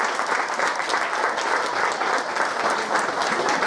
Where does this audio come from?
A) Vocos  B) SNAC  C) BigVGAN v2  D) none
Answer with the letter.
D